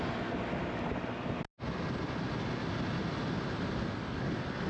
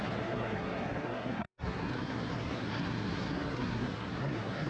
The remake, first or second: second